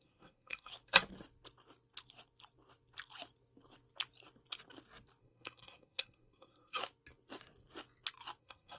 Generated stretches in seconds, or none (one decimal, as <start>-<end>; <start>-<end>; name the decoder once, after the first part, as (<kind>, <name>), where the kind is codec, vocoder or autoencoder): 0.0-0.7 (codec, SNAC); 5.2-6.8; 8.4-8.8